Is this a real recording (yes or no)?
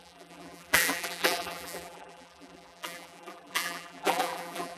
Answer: no